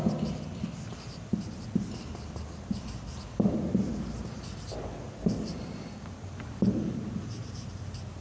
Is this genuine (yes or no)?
no